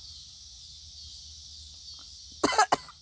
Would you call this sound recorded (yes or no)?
yes